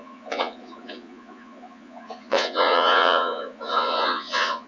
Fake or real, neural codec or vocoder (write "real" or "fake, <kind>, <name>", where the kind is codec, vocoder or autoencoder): fake, vocoder, Vocos